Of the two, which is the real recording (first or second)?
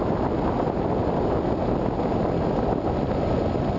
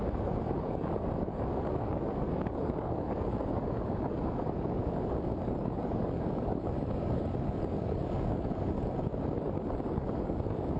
first